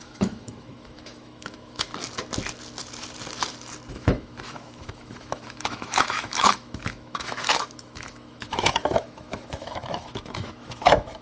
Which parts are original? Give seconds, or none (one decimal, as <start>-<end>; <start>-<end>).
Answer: 1.9-3.9